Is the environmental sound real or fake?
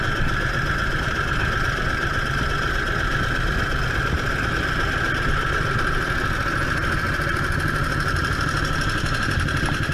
real